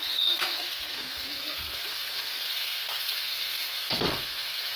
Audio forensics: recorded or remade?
remade